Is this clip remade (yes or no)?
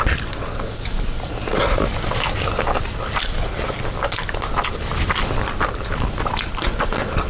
no